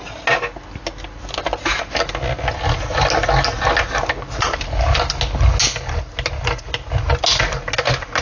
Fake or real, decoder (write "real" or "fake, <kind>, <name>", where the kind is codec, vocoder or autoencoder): real